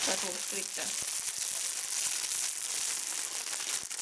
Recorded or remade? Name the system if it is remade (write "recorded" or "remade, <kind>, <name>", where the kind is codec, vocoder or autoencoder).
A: recorded